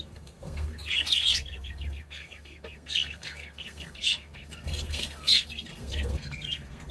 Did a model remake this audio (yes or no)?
yes